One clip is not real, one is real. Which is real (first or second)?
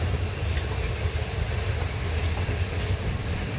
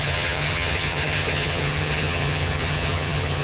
first